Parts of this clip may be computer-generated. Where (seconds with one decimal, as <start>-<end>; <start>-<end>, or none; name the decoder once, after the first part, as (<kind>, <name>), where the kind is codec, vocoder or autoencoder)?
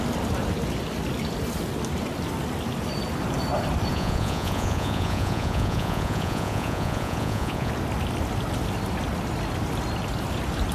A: 3.9-7.7 (vocoder, Vocos)